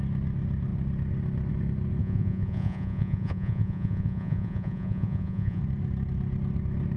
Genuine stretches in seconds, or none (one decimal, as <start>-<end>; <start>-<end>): 0.0-2.0; 5.6-7.0